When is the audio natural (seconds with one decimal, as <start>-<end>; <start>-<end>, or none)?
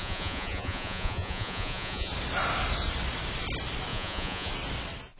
2.1-3.9; 4.5-5.2